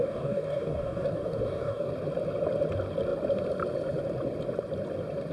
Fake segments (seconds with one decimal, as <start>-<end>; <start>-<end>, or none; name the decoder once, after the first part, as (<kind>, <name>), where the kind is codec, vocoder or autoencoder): 0.0-1.9 (codec, DAC)